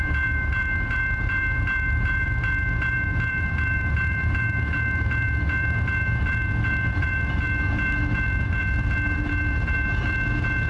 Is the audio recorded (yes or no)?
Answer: no